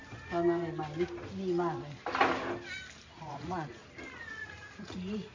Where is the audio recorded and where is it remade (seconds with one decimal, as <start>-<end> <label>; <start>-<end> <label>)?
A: 0.0-3.2 recorded; 3.2-3.8 remade; 3.8-4.4 recorded; 4.4-5.3 remade

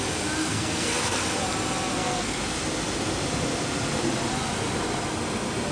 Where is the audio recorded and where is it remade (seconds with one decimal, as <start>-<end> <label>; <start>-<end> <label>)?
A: 0.0-0.4 recorded; 0.4-1.2 remade; 1.2-1.9 recorded; 1.9-2.4 remade; 2.4-5.7 recorded

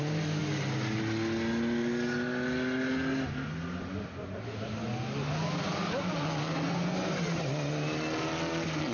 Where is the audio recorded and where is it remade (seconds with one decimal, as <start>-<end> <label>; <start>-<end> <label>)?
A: 0.0-8.9 recorded

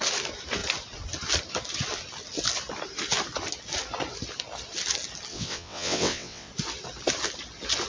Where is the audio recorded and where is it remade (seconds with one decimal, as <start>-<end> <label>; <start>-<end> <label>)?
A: 0.0-5.3 recorded; 5.3-6.5 remade; 6.5-7.9 recorded

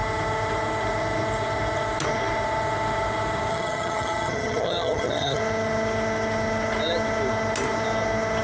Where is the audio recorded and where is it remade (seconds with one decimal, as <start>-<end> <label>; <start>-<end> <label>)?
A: 0.0-3.5 recorded; 3.5-5.4 remade; 5.4-8.4 recorded

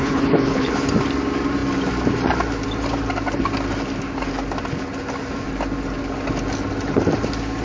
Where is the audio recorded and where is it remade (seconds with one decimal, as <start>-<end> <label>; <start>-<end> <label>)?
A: 0.0-0.7 remade; 0.7-7.6 recorded